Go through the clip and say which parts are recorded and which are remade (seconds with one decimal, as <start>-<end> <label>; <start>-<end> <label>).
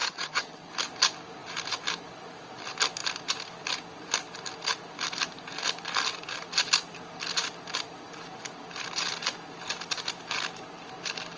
0.0-0.7 remade; 0.7-11.4 recorded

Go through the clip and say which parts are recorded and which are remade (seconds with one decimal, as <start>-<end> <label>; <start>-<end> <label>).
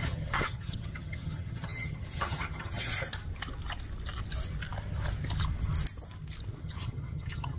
0.0-2.9 remade; 2.9-6.6 recorded; 6.6-7.6 remade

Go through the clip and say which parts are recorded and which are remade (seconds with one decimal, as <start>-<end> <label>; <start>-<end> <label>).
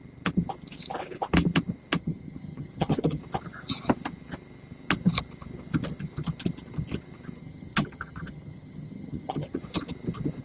0.0-2.0 recorded; 2.0-3.2 remade; 3.2-7.4 recorded; 7.4-9.6 remade; 9.6-10.4 recorded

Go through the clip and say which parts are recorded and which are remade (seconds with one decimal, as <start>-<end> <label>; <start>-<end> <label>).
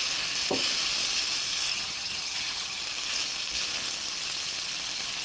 0.0-1.7 recorded; 1.7-2.8 remade; 2.8-5.2 recorded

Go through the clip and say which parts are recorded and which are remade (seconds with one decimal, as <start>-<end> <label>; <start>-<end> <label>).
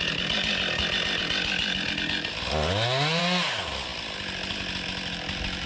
0.0-5.7 recorded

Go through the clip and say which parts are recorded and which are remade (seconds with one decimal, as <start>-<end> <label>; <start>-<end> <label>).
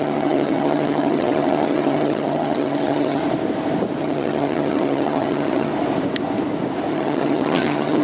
0.0-3.2 remade; 3.2-4.0 recorded; 4.0-5.7 remade; 5.7-6.9 recorded; 6.9-8.0 remade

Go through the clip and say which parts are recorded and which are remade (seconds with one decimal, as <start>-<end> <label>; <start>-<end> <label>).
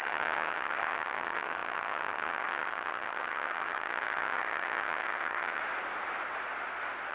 0.0-5.6 remade; 5.6-7.1 recorded